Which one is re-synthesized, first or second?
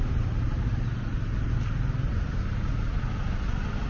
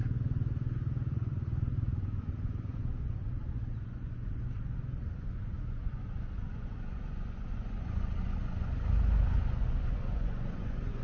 second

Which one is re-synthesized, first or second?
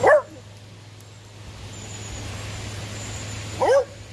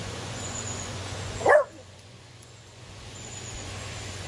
second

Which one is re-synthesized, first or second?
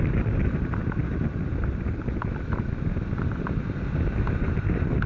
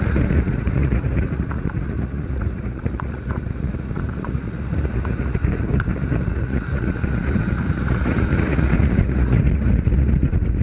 second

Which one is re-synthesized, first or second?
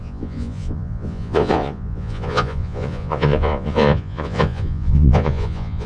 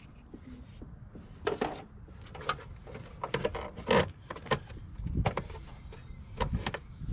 first